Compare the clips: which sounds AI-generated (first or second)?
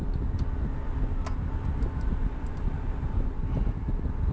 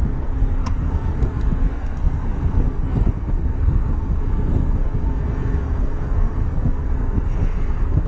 second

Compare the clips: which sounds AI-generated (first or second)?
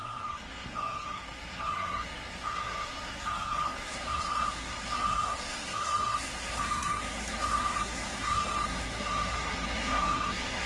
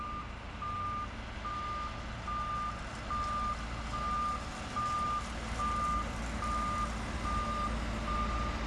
first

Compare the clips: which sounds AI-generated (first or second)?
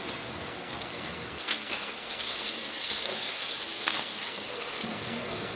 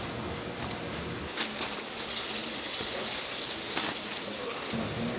first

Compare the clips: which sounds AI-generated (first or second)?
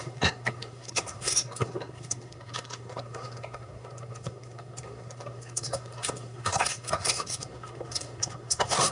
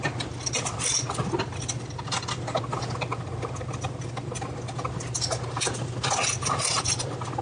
first